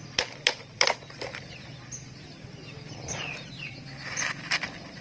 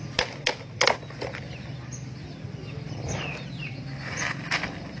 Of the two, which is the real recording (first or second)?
second